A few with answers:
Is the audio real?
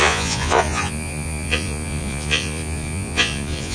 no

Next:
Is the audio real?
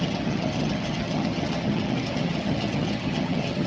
no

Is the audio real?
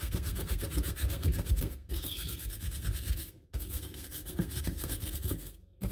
no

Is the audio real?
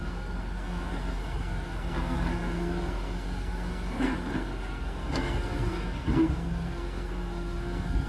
no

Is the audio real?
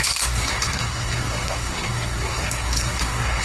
no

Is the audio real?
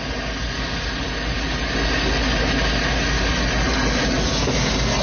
yes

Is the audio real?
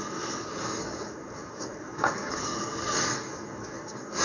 no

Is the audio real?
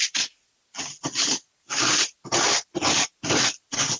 yes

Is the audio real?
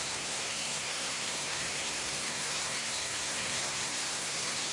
no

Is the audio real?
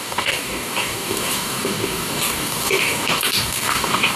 no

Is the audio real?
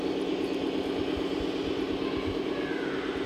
yes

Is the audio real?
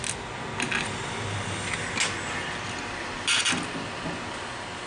yes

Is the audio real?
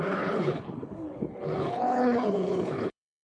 no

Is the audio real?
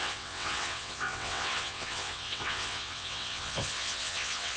no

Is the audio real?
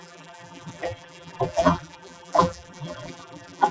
no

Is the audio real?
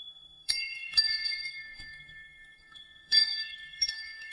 no